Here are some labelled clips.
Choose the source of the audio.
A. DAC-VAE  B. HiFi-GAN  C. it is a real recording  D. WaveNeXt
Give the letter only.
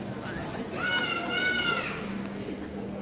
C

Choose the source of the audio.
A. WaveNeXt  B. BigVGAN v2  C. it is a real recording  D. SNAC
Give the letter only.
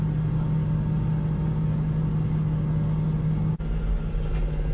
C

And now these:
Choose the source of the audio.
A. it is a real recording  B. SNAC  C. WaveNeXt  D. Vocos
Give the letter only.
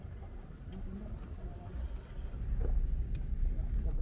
A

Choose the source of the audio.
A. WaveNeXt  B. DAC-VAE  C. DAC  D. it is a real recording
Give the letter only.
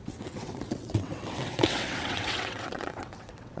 A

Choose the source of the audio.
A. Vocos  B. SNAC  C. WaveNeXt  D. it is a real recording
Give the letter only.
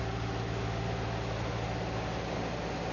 D